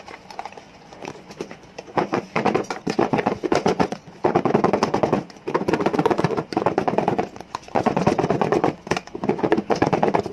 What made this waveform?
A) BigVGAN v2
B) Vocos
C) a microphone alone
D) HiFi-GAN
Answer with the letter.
B